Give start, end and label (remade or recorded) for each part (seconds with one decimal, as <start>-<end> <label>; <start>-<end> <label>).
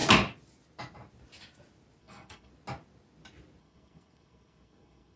0.0-2.0 recorded; 2.0-2.5 remade; 2.5-3.6 recorded; 3.6-5.2 remade